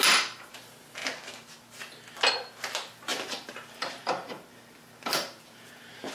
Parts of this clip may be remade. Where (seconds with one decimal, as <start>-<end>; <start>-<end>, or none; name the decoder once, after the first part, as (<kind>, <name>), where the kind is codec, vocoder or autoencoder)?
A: 3.1-6.1 (vocoder, BigVGAN v2)